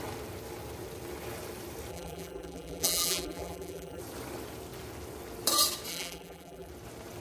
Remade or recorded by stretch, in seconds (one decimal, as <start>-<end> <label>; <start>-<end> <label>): 0.0-1.9 recorded; 1.9-4.0 remade; 4.0-5.9 recorded; 5.9-6.7 remade; 6.7-7.2 recorded